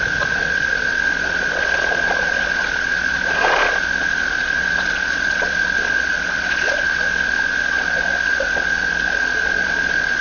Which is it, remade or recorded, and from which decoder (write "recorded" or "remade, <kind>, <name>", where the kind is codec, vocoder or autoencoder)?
remade, vocoder, Vocos